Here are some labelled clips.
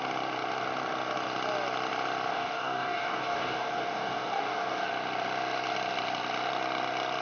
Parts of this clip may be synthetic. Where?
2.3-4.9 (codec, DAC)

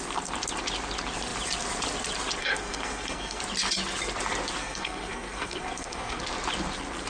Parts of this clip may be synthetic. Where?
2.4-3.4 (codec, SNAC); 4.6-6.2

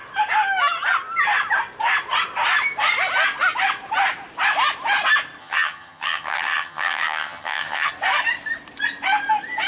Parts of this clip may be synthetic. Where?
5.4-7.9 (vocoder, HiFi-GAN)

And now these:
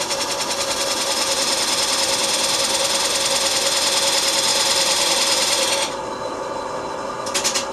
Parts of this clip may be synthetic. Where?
4.5-6.1 (vocoder, BigVGAN v2)